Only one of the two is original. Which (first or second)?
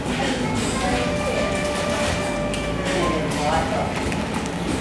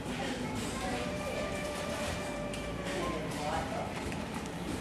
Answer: first